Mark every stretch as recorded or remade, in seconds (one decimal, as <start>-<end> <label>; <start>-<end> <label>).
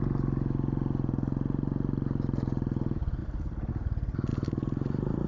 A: 0.0-3.2 recorded; 3.2-3.7 remade; 3.7-4.3 recorded; 4.3-5.3 remade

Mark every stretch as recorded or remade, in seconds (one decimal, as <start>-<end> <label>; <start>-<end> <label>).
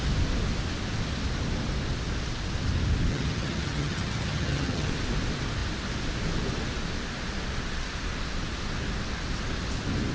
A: 0.0-3.1 recorded; 3.1-4.9 remade; 4.9-10.1 recorded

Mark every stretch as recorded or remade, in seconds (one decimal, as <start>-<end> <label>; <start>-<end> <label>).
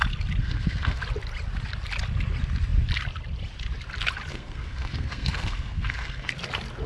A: 0.0-0.4 recorded; 0.4-1.0 remade; 1.0-4.3 recorded; 4.3-6.3 remade; 6.3-6.9 recorded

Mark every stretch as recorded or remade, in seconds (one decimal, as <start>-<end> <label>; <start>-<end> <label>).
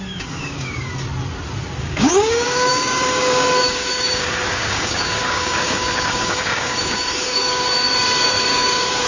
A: 0.0-0.9 remade; 0.9-1.8 recorded; 1.8-9.1 remade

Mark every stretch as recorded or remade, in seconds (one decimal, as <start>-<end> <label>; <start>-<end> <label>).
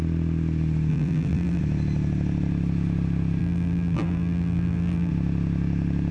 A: 0.0-0.9 recorded; 0.9-1.6 remade; 1.6-3.4 recorded; 3.4-5.1 remade; 5.1-6.1 recorded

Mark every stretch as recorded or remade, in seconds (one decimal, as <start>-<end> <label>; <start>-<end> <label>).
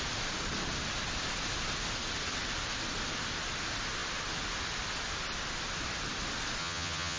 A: 0.0-6.6 recorded; 6.6-7.2 remade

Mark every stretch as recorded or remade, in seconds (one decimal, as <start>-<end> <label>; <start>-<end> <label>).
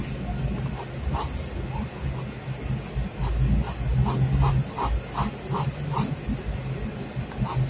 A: 0.0-7.7 recorded